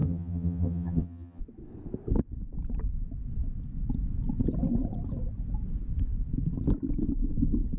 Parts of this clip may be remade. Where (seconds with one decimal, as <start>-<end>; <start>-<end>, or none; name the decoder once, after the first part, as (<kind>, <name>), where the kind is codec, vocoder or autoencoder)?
0.0-1.4 (vocoder, HiFi-GAN)